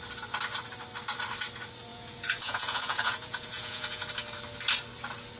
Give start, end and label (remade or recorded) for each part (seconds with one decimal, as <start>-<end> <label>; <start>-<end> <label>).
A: 0.0-1.9 recorded; 1.9-4.1 remade; 4.1-5.4 recorded